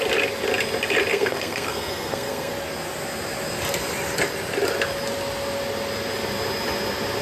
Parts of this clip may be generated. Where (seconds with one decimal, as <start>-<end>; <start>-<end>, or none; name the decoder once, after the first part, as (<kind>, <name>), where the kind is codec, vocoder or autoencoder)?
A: 1.1-2.5 (codec, SNAC)